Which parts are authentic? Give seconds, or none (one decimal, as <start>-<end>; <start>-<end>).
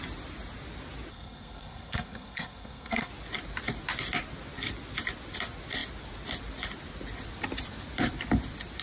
0.0-1.1; 3.1-8.8